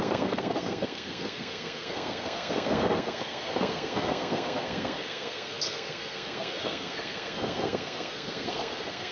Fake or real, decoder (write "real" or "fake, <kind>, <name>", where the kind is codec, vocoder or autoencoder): fake, codec, SNAC